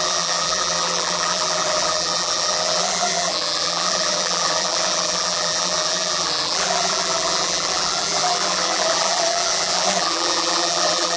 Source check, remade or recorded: remade